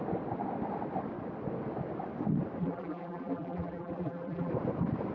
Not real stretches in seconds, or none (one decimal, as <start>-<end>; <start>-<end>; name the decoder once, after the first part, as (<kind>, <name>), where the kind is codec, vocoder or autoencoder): 2.6-4.5 (vocoder, BigVGAN v2)